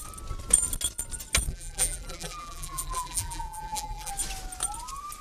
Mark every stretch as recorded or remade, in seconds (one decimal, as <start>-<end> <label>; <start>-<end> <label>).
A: 0.0-1.5 recorded; 1.5-4.1 remade; 4.1-5.2 recorded